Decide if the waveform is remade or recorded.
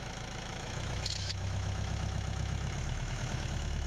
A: remade